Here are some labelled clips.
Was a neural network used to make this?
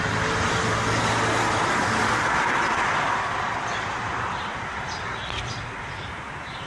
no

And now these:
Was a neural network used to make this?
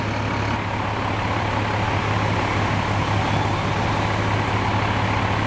no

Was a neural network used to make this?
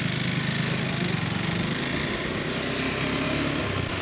no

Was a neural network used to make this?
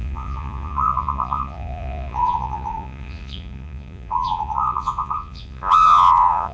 yes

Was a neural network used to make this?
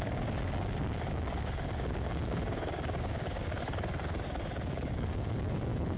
yes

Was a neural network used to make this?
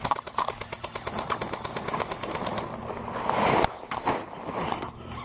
yes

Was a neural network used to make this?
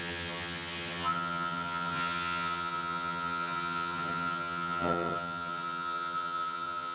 yes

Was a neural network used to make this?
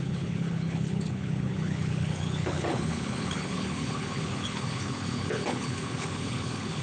yes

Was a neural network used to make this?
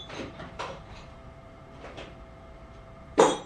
yes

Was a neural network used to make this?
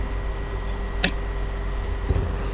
no